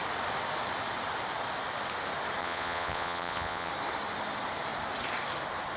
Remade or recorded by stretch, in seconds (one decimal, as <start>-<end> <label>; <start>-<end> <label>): 0.0-2.4 recorded; 2.4-3.7 remade; 3.7-5.8 recorded